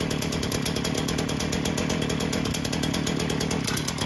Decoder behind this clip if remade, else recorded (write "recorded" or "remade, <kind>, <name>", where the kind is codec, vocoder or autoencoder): recorded